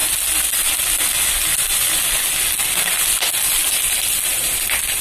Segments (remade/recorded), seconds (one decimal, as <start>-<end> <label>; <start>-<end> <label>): 0.0-5.0 recorded